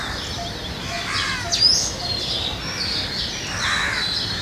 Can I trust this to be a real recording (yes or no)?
yes